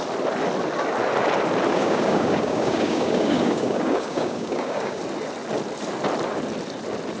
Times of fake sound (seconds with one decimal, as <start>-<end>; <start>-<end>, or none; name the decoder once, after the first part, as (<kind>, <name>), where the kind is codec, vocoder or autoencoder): 1.7-5.0 (codec, DAC)